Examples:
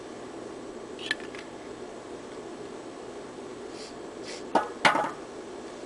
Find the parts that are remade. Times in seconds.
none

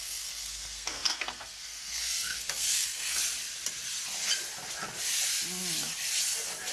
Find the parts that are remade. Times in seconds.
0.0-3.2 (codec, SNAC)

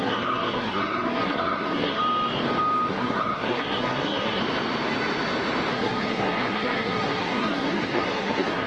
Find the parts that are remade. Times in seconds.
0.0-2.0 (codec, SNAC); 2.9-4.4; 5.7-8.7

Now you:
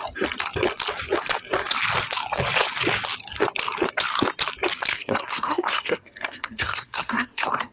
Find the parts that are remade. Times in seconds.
4.9-7.7 (codec, SNAC)

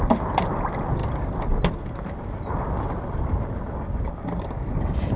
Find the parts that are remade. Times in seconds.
none